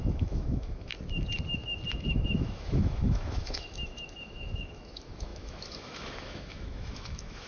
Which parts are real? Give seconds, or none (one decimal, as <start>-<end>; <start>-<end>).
0.9-1.9